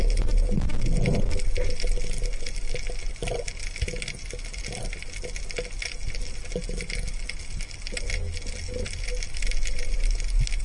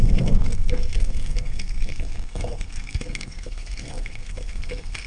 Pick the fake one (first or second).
second